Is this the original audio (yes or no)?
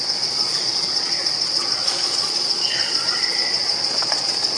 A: no